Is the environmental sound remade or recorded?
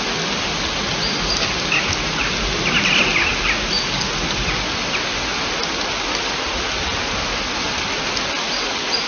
recorded